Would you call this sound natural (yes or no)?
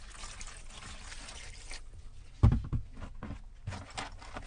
yes